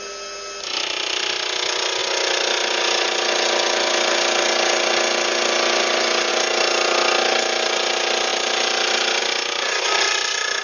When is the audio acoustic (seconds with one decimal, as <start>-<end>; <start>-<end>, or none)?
0.0-10.6